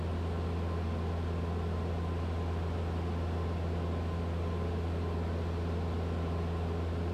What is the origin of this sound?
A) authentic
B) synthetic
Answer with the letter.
A